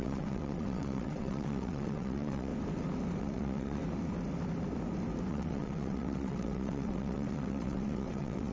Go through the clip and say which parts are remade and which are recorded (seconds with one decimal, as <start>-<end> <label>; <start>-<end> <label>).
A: 0.0-2.5 remade; 2.5-3.2 recorded; 3.2-3.8 remade; 3.8-5.3 recorded; 5.3-8.5 remade